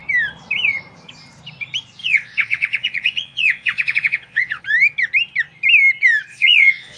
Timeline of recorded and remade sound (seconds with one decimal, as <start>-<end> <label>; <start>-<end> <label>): 0.0-2.0 recorded; 2.0-4.6 remade; 4.6-6.3 recorded; 6.3-7.0 remade